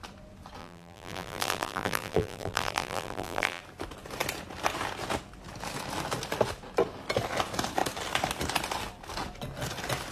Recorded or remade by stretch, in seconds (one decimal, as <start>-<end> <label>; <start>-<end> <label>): 0.0-0.6 recorded; 0.6-3.6 remade; 3.6-10.1 recorded